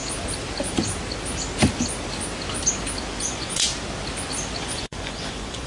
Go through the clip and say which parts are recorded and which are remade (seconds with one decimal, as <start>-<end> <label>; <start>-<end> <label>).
0.0-3.2 recorded; 3.2-3.7 remade; 3.7-4.6 recorded; 4.6-5.7 remade